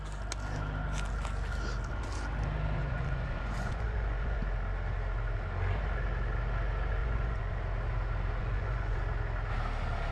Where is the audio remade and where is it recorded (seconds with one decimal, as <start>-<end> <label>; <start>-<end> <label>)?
0.0-2.8 recorded; 2.8-4.4 remade; 4.4-7.0 recorded; 7.0-7.5 remade; 7.5-8.4 recorded; 8.4-9.0 remade; 9.0-10.1 recorded

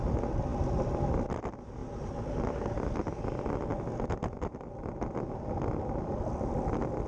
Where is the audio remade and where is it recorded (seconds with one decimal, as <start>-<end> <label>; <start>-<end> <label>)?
0.0-7.1 recorded

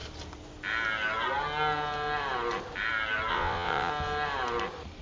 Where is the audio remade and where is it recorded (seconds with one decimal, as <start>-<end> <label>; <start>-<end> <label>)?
0.0-3.3 recorded; 3.3-3.9 remade; 3.9-5.0 recorded

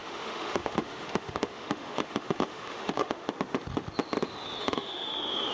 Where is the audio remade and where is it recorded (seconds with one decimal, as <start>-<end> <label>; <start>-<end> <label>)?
0.0-3.3 remade; 3.3-4.6 recorded; 4.6-5.1 remade; 5.1-5.5 recorded

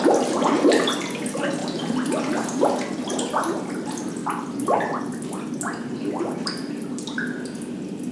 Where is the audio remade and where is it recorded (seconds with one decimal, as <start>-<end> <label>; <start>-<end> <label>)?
0.0-8.1 recorded

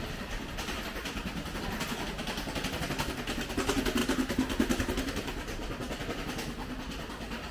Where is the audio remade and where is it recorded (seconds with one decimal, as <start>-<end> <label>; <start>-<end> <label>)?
0.0-7.5 recorded

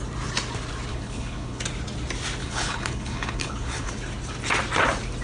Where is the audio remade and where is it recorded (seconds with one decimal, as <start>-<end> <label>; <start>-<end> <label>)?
0.0-0.9 recorded; 0.9-1.6 remade; 1.6-2.4 recorded; 2.4-3.9 remade; 3.9-5.2 recorded

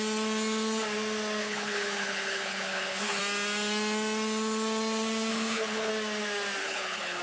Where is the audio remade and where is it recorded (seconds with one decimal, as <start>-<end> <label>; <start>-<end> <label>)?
0.0-1.4 recorded; 1.4-3.2 remade; 3.2-5.3 recorded; 5.3-5.9 remade; 5.9-6.6 recorded; 6.6-7.2 remade